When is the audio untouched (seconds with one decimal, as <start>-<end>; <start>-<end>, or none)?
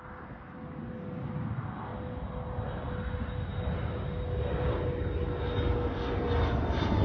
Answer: 0.0-7.0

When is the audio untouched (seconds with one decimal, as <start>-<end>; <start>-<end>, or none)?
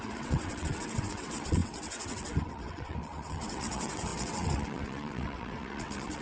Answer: none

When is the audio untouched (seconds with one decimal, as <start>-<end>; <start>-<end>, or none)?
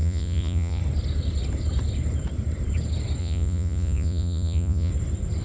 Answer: 0.8-3.2; 4.9-5.4